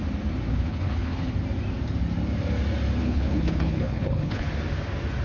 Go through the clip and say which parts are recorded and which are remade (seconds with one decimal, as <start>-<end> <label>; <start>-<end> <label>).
0.0-0.5 recorded; 0.5-1.3 remade; 1.3-3.0 recorded; 3.0-4.5 remade; 4.5-5.2 recorded